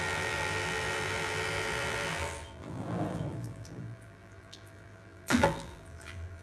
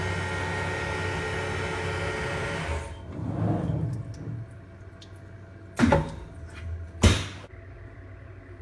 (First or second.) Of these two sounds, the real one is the second